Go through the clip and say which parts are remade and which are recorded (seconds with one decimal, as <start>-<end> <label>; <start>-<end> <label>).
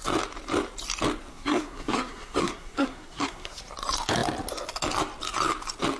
0.0-1.3 recorded; 1.3-3.6 remade; 3.6-6.0 recorded